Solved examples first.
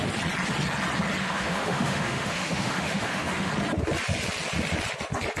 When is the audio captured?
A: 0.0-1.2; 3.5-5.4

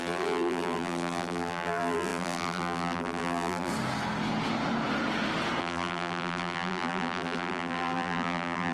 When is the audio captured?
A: 3.7-5.6

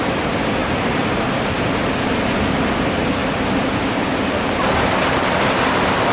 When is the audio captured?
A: 0.0-0.6; 1.5-6.1